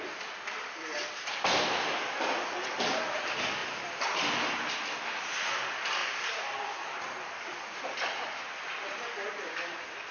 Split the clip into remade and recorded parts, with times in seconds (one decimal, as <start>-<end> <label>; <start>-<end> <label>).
0.0-10.1 recorded